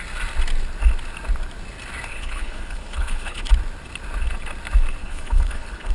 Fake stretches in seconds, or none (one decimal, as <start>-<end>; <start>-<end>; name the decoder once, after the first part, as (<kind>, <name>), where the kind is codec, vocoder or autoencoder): 2.1-3.5 (codec, HILCodec); 5.0-5.9